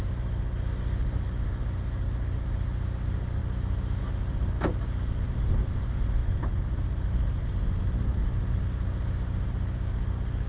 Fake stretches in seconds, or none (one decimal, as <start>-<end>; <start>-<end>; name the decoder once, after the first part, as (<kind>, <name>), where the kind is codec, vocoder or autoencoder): none